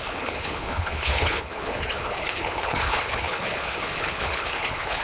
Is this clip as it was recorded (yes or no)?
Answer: no